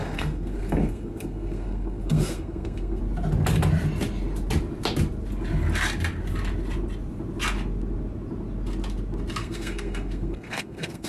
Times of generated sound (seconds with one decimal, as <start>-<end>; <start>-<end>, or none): 0.0-3.0; 9.4-11.1